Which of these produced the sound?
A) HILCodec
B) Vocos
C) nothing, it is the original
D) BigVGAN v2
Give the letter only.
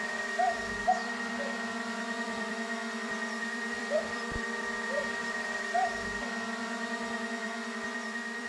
D